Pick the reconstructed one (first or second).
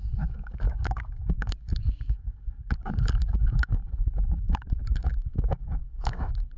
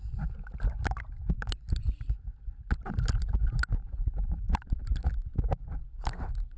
first